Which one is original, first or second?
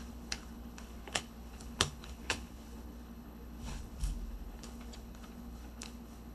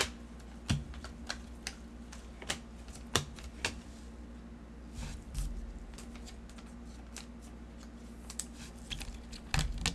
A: second